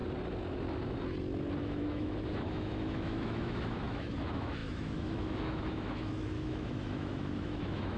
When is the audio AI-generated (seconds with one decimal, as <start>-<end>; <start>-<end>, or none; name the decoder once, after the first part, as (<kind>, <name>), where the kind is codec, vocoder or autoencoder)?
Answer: 1.6-8.0 (autoencoder, DAC-VAE)